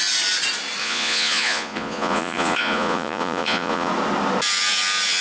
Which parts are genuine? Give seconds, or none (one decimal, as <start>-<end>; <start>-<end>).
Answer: 0.0-0.8; 3.9-5.2